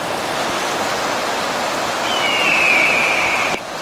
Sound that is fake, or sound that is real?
fake